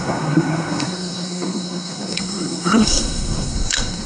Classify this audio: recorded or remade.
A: remade